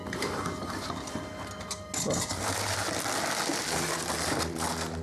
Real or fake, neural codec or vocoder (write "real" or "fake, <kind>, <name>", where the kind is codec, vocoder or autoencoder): real